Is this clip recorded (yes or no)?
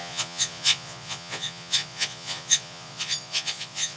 no